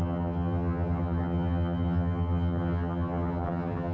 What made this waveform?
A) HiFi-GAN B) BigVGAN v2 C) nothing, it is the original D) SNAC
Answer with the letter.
A